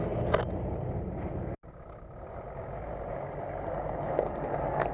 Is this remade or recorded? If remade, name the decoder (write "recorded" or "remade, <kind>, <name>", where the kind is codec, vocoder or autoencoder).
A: recorded